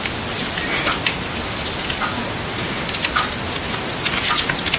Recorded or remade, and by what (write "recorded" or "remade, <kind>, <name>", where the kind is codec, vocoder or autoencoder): recorded